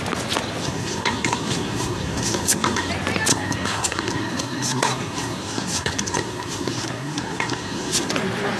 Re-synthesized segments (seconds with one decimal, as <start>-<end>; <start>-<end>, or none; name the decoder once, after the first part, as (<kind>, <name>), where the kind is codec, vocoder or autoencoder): 0.6-2.9 (codec, SNAC); 3.3-8.1